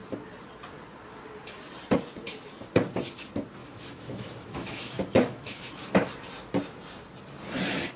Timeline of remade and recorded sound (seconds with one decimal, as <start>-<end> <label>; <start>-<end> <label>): 0.0-3.6 recorded; 3.6-6.1 remade; 6.1-8.0 recorded

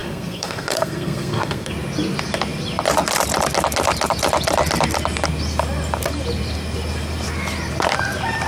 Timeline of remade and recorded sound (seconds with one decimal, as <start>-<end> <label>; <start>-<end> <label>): 0.0-1.7 remade; 1.7-8.5 recorded